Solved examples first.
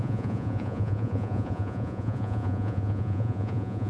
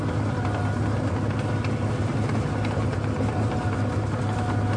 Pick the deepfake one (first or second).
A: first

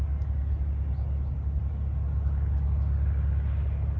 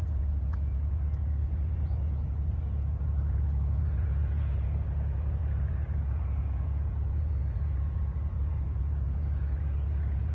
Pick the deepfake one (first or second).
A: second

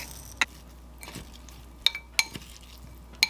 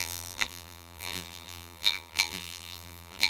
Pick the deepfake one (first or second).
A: second